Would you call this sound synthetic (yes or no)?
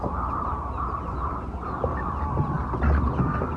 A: no